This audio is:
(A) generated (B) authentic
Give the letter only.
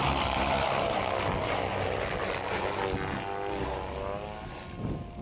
B